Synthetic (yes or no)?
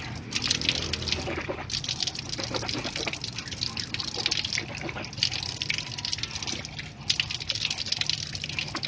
no